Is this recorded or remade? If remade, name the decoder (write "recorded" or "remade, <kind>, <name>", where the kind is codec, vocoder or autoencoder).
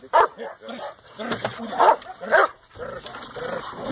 recorded